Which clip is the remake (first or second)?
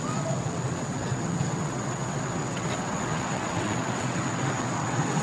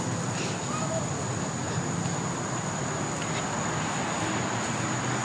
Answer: first